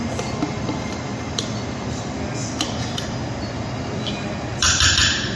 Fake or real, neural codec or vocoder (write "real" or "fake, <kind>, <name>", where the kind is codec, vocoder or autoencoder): fake, vocoder, BigVGAN v2